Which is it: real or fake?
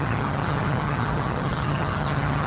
fake